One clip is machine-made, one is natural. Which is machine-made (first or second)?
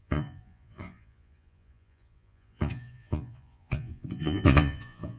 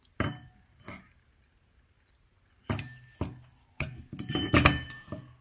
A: first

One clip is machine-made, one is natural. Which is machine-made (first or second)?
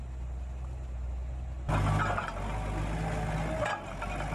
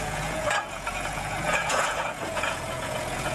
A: second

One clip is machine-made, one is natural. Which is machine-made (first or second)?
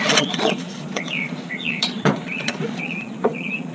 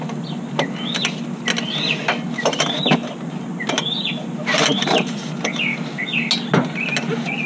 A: first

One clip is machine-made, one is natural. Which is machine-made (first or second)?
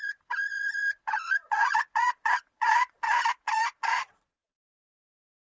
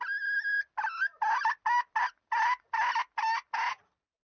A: first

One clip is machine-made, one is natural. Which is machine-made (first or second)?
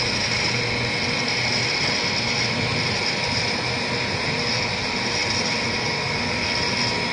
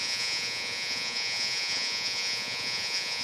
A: second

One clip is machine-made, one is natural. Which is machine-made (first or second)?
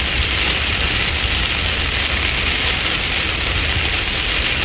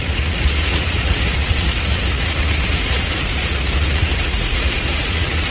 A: second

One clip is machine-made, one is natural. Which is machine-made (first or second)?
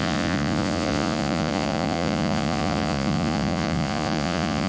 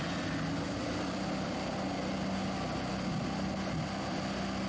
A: first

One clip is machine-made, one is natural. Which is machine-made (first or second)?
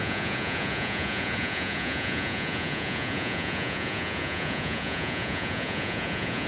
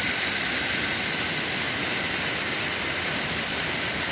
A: first